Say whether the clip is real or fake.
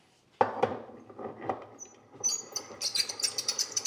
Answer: fake